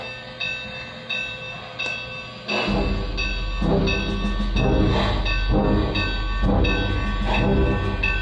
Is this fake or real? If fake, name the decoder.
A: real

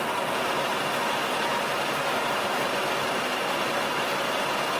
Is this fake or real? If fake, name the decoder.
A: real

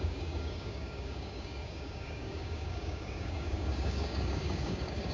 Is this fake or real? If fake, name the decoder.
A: fake, codec, DAC